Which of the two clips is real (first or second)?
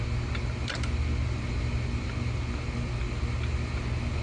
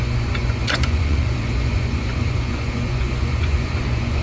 first